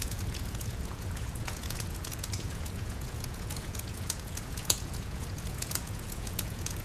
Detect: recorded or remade remade